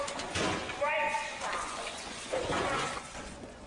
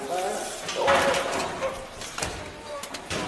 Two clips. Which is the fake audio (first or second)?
first